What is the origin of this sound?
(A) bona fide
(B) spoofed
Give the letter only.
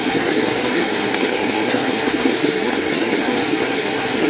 B